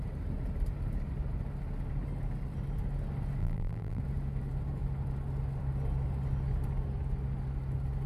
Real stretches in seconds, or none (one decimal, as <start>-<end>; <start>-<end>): 0.0-3.4; 4.0-8.1